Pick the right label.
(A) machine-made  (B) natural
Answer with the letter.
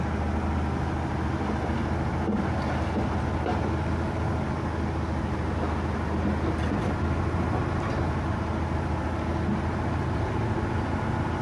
B